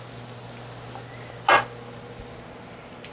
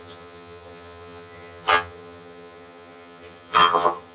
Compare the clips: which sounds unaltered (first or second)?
first